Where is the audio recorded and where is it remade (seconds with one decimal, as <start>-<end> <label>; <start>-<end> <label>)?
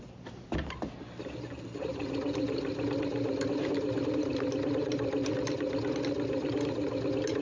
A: 0.0-7.4 recorded